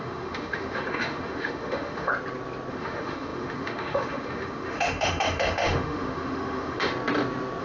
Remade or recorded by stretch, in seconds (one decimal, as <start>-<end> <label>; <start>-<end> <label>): 0.0-2.1 remade; 2.1-2.7 recorded; 2.7-6.9 remade; 6.9-7.6 recorded